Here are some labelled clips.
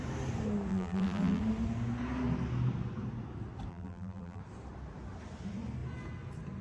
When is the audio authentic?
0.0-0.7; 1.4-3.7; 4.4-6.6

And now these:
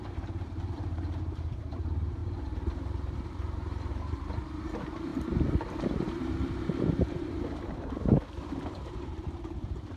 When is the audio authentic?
none

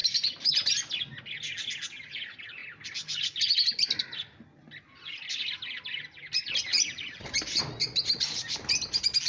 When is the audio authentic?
0.7-6.7; 8.8-9.3

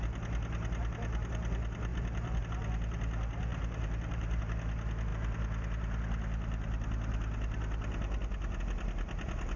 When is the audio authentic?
0.0-1.9; 2.4-3.5; 4.4-9.6

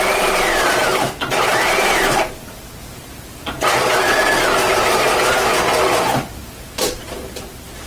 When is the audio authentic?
0.0-1.5; 2.2-2.8; 3.7-6.4; 7.2-7.9